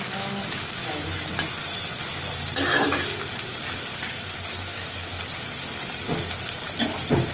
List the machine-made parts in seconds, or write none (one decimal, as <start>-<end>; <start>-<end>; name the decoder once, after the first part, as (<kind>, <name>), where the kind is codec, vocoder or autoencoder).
0.8-1.3 (autoencoder, DAC-VAE); 4.5-5.1